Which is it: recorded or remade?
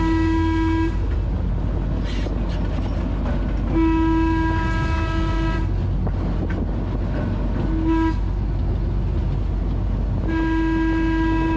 recorded